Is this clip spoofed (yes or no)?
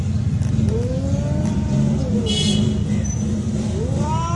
no